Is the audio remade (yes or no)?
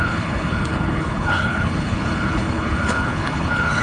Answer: yes